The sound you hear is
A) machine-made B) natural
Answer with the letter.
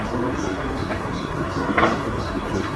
A